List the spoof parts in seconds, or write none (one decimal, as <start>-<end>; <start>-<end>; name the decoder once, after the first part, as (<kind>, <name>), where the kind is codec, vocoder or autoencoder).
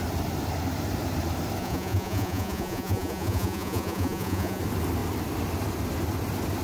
1.6-4.6 (vocoder, Vocos)